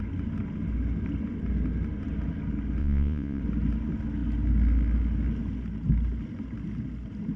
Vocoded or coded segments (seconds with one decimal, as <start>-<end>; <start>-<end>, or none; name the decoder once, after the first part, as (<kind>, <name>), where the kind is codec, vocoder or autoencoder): 2.8-3.4 (vocoder, Vocos)